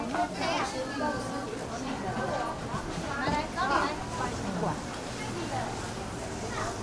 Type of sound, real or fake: real